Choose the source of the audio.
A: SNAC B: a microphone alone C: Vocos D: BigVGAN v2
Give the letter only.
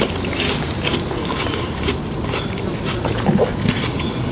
B